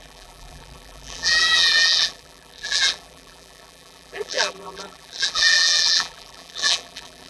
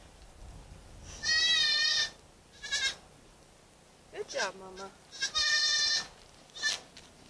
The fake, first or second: first